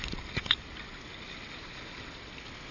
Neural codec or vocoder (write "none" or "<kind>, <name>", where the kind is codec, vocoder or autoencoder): none